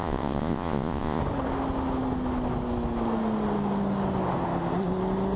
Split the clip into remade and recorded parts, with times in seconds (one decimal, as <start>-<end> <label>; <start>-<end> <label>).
0.0-1.2 remade; 1.2-5.4 recorded